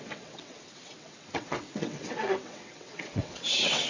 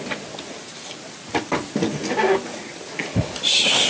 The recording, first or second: second